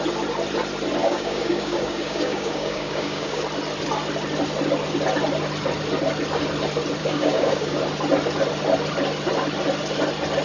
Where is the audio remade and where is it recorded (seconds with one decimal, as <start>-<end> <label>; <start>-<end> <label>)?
0.0-1.0 recorded; 1.0-3.4 remade; 3.4-7.0 recorded; 7.0-7.8 remade; 7.8-10.4 recorded